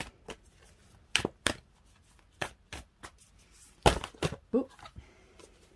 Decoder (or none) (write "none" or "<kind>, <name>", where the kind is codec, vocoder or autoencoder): none